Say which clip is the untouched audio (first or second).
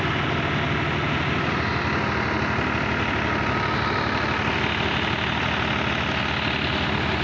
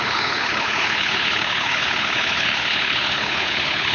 first